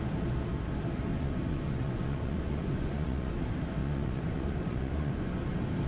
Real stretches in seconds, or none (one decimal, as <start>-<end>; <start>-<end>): 0.0-1.1; 3.3-3.8; 5.3-5.9